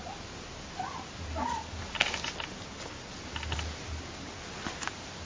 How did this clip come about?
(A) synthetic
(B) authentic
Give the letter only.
B